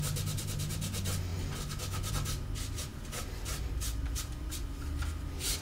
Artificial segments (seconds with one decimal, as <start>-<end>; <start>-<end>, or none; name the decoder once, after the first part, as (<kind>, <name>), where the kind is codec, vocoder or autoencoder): none